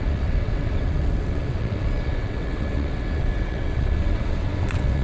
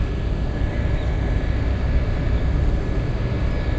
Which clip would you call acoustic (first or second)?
second